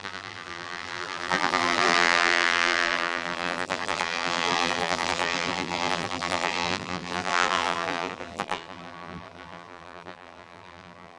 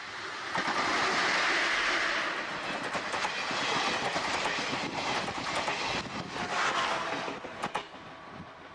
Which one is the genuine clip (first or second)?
second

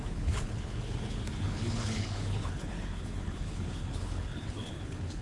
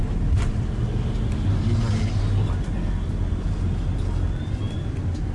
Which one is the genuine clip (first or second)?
second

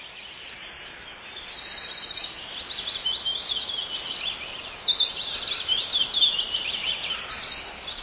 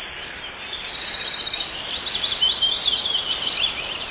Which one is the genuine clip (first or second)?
first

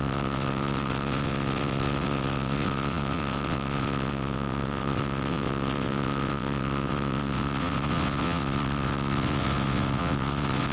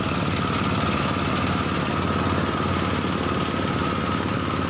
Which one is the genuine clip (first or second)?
second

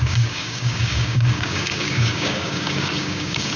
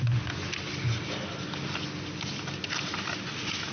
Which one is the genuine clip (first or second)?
second